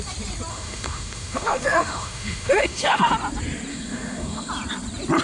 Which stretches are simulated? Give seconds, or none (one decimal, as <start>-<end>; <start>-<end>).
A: 0.5-3.1; 3.7-4.5

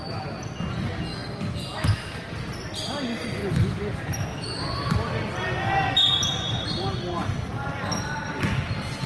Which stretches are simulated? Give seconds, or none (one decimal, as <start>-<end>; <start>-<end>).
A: none

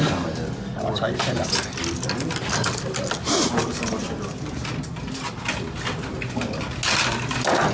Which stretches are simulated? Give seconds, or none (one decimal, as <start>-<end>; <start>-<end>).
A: none